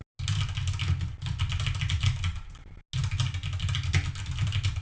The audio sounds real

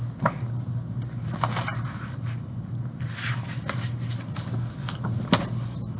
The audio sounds real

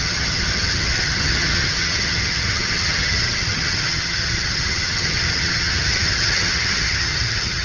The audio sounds fake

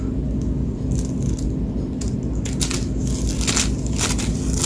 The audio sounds real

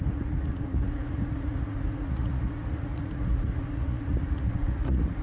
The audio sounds fake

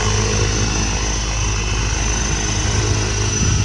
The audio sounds real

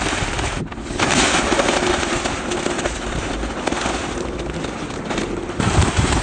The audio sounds real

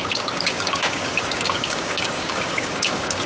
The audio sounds fake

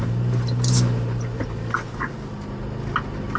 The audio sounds real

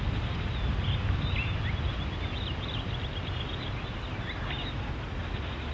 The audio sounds real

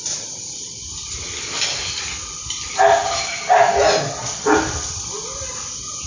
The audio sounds real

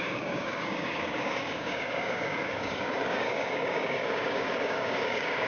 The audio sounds fake